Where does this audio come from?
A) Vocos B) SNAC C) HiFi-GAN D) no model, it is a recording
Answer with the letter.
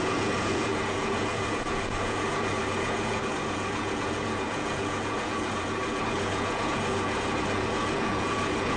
A